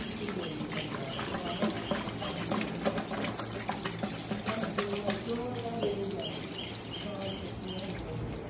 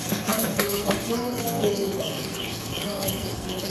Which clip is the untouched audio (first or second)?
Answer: first